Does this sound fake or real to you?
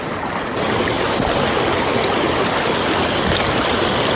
real